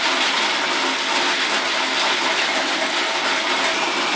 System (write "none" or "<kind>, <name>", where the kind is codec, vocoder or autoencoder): none